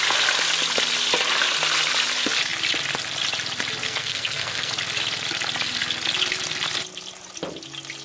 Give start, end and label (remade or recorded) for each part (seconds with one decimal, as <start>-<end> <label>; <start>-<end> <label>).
0.0-3.8 recorded; 3.8-4.7 remade; 4.7-8.0 recorded

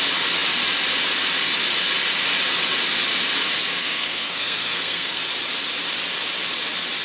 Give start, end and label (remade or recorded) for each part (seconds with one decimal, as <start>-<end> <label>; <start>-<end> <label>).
0.0-3.8 recorded; 3.8-5.2 remade; 5.2-7.0 recorded

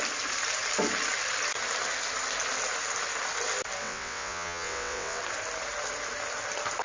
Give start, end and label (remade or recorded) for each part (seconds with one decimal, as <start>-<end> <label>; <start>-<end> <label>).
0.0-3.8 recorded; 3.8-5.2 remade; 5.2-6.8 recorded

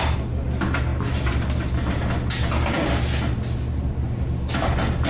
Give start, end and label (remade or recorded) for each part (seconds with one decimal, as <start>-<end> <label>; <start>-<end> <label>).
0.0-5.1 recorded

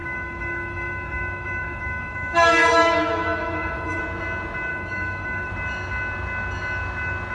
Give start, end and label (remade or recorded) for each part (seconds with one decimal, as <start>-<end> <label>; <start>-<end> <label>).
0.0-4.0 remade; 4.0-4.7 recorded; 4.7-5.5 remade; 5.5-7.3 recorded

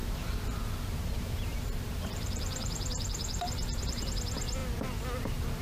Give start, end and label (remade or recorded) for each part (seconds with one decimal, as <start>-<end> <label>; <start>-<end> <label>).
0.0-3.4 remade; 3.4-5.6 recorded